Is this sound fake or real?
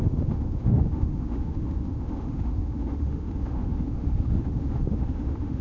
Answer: fake